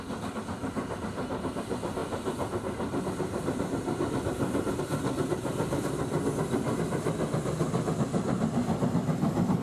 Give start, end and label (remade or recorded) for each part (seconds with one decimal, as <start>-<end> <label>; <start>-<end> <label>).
0.0-0.8 recorded; 0.8-1.6 remade; 1.6-9.6 recorded